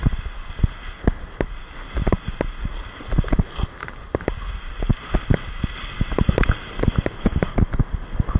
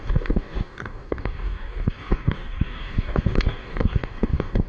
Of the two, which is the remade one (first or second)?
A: second